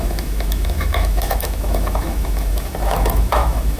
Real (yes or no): no